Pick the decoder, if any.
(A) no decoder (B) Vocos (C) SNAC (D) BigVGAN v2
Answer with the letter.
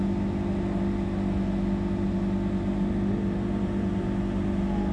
A